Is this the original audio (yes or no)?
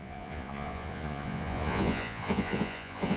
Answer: no